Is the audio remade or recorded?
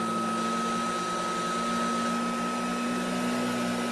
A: recorded